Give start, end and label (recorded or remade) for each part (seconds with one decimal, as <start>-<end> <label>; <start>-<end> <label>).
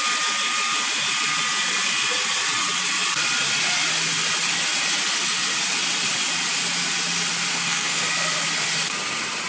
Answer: 0.0-7.5 recorded; 7.5-8.0 remade; 8.0-9.5 recorded